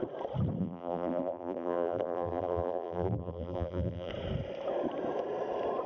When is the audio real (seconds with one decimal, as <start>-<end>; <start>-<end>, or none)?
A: 0.0-0.6; 4.1-5.9